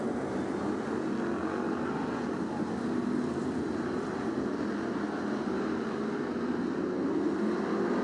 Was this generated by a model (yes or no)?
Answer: no